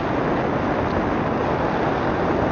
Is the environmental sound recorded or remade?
recorded